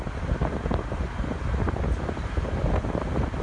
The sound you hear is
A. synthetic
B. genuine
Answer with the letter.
B